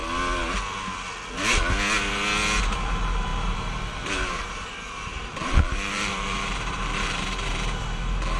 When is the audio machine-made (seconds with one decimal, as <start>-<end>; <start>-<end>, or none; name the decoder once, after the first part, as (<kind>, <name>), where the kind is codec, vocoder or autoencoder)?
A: 2.6-8.4 (vocoder, BigVGAN v2)